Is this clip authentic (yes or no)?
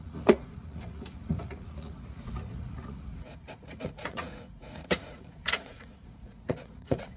no